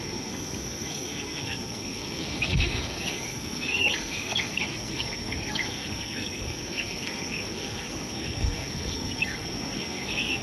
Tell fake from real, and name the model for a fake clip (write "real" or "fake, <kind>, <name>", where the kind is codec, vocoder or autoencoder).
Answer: fake, codec, SNAC